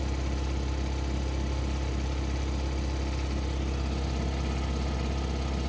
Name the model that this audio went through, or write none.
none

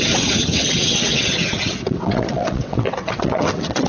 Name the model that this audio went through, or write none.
vocoder, WaveNeXt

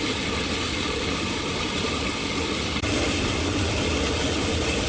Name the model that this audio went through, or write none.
none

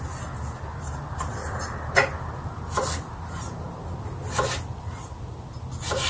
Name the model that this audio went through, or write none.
none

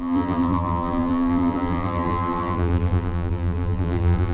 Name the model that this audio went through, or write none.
vocoder, BigVGAN v2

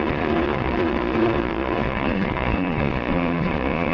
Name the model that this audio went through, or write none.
vocoder, Vocos